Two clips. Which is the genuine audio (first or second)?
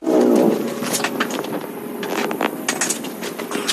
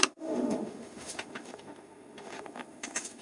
first